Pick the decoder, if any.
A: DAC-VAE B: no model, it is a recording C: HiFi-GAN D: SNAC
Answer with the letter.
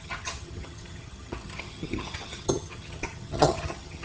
C